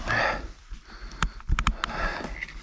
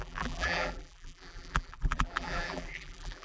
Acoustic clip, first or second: first